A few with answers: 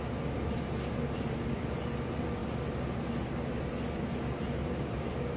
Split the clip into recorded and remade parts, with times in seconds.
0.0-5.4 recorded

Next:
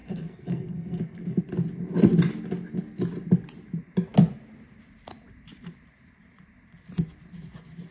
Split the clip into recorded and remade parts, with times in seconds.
0.0-1.4 remade; 1.4-7.9 recorded

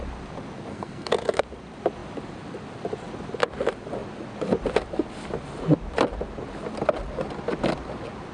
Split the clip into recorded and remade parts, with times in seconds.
0.0-0.7 recorded; 0.7-1.4 remade; 1.4-8.3 recorded

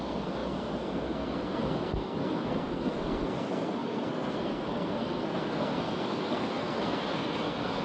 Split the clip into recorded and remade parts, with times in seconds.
0.0-7.8 remade

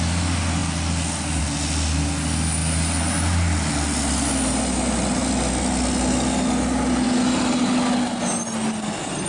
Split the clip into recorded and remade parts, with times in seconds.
0.0-9.3 recorded

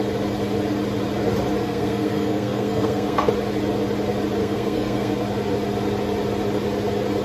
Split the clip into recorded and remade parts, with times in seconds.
0.0-1.6 recorded; 1.6-3.3 remade; 3.3-4.4 recorded; 4.4-5.1 remade; 5.1-7.2 recorded

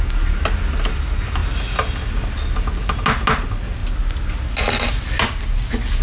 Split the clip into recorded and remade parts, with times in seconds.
0.0-6.0 recorded